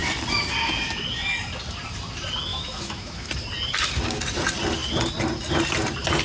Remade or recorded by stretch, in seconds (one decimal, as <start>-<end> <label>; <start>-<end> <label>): 0.0-2.5 recorded; 2.5-3.3 remade; 3.3-6.2 recorded